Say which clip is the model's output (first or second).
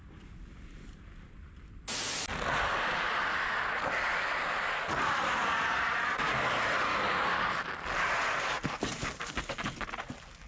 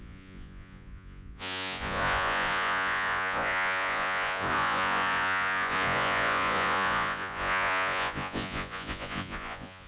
second